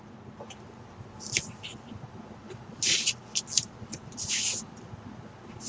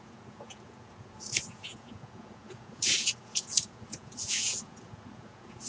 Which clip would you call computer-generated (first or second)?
second